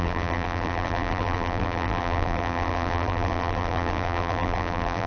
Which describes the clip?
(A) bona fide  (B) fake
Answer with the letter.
B